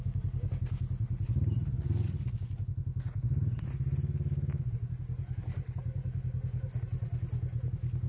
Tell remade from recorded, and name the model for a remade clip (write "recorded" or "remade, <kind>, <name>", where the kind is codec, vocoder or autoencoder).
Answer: recorded